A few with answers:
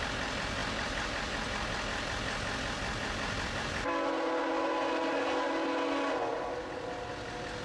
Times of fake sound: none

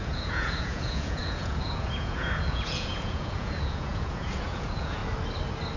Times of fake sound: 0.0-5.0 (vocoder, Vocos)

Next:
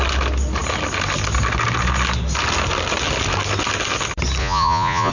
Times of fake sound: 4.4-5.1 (vocoder, Vocos)

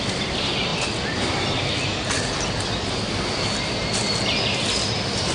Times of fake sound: none

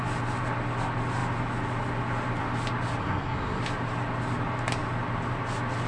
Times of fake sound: 3.0-3.6 (codec, SNAC)

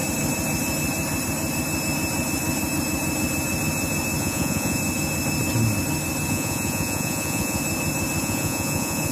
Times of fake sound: 4.2-4.8 (vocoder, Vocos); 6.3-7.6; 8.2-9.1